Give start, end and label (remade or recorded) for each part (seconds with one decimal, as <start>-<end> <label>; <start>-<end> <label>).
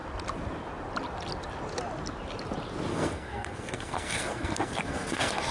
0.0-2.9 recorded; 2.9-5.5 remade